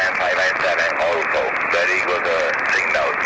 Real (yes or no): yes